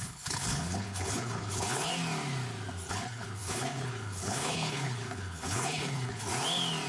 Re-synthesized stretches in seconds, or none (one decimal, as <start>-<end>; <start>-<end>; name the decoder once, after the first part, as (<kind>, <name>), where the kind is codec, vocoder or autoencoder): 0.0-1.9 (codec, HILCodec); 2.9-6.3